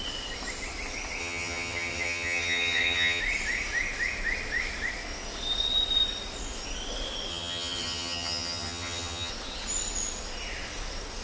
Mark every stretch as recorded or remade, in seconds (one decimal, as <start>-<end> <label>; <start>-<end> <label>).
0.0-1.2 recorded; 1.2-3.2 remade; 3.2-7.3 recorded; 7.3-9.3 remade; 9.3-11.2 recorded

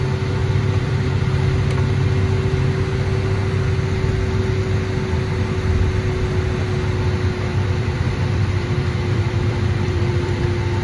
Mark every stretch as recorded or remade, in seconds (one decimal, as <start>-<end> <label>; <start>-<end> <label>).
0.0-0.4 recorded; 0.4-1.2 remade; 1.2-7.5 recorded; 7.5-10.4 remade; 10.4-10.8 recorded

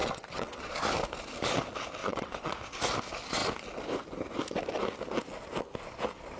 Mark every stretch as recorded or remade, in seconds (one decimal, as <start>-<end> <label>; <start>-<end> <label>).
0.0-0.7 remade; 0.7-2.0 recorded; 2.0-2.5 remade; 2.5-6.4 recorded

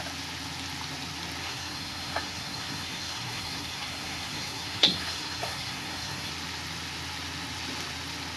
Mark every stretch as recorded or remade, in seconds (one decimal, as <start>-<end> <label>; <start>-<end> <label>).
0.0-1.4 recorded; 1.4-6.3 remade; 6.3-8.4 recorded

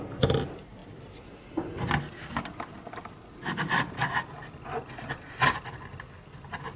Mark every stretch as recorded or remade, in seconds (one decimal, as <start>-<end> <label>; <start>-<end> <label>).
0.0-6.8 recorded

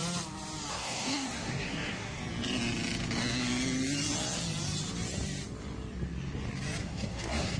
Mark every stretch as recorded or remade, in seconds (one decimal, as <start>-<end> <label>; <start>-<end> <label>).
0.0-0.7 recorded; 0.7-2.2 remade; 2.2-6.8 recorded; 6.8-7.6 remade